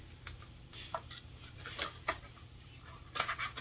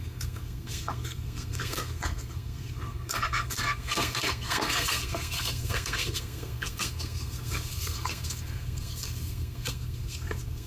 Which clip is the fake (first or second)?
second